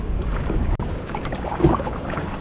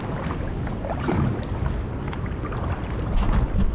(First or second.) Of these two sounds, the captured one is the second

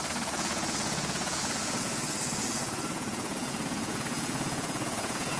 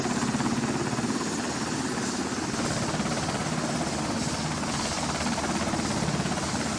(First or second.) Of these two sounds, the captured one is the second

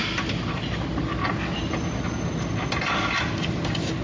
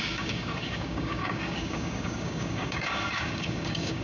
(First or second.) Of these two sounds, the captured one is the first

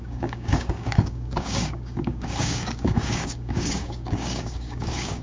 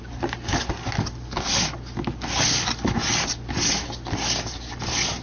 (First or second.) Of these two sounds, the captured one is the second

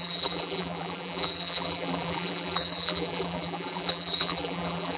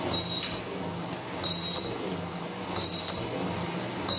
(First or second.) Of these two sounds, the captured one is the second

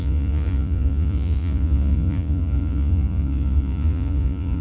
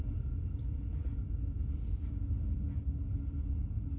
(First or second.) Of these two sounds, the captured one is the second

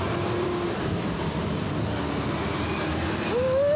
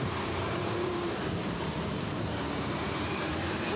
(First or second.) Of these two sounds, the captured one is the first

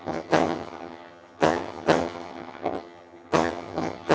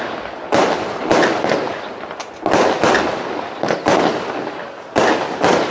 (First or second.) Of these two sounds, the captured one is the second